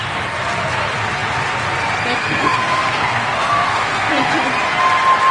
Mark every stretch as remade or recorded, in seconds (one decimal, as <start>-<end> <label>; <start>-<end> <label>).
0.0-2.2 recorded; 2.2-4.3 remade; 4.3-5.3 recorded